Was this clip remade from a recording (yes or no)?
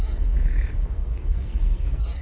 yes